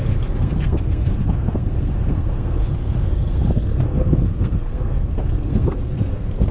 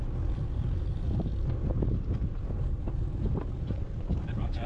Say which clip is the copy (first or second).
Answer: first